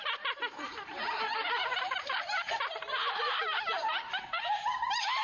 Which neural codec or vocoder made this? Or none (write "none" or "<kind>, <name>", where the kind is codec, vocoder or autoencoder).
vocoder, BigVGAN v2